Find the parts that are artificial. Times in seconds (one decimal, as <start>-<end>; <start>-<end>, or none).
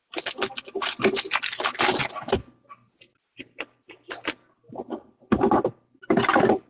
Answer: none